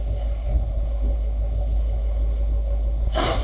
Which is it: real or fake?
fake